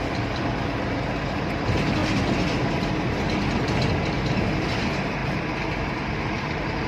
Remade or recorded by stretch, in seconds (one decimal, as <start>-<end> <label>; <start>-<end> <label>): 0.0-6.9 recorded